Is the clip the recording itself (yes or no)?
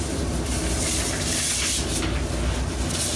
yes